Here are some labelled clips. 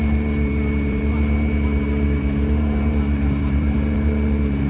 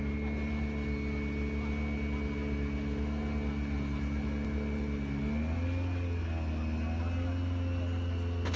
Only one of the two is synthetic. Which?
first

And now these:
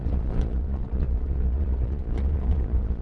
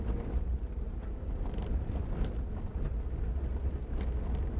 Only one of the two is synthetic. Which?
first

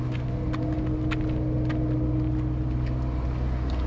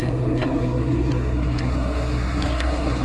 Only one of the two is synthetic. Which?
second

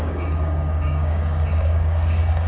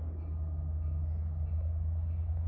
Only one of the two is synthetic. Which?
first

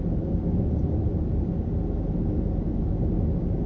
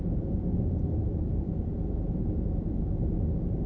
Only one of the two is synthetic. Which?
second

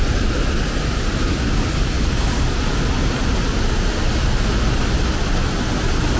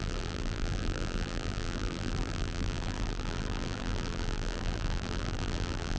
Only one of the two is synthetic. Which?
second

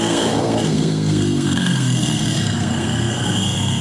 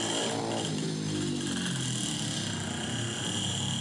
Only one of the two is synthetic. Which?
first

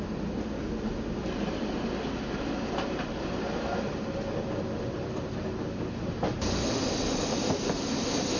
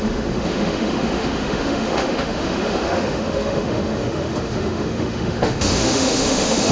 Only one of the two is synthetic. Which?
second